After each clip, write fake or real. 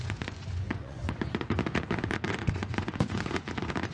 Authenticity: fake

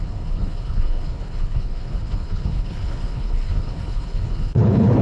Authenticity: fake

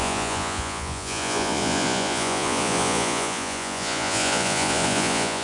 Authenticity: fake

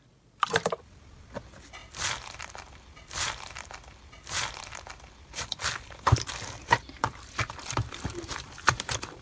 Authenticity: fake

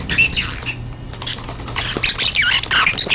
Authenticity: real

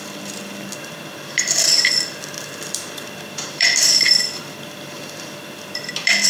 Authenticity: fake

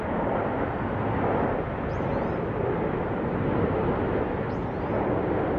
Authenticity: real